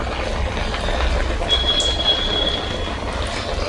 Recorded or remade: recorded